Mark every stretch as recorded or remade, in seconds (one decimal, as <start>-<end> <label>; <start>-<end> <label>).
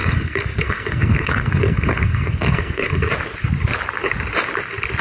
0.0-3.0 remade; 3.0-5.0 recorded